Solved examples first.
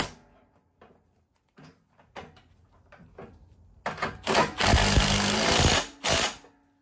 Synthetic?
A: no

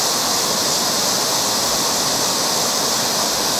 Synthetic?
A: no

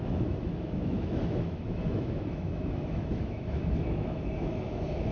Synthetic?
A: yes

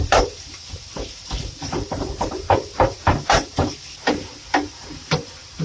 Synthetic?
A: yes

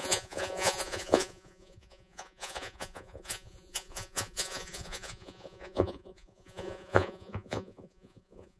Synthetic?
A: yes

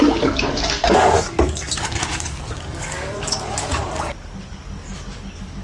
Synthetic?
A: yes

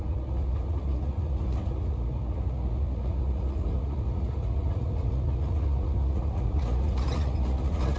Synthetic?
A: yes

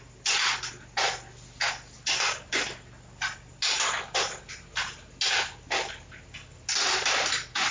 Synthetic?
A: no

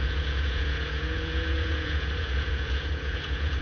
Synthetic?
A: yes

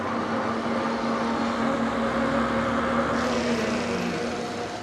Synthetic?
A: no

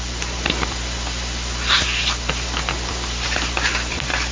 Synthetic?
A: no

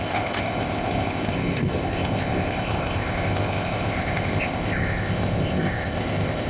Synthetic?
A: yes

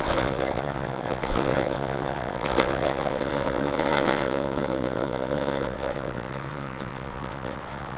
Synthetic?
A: yes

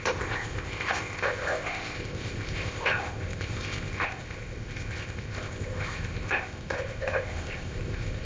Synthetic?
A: yes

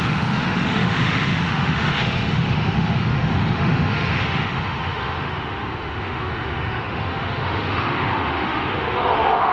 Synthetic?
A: yes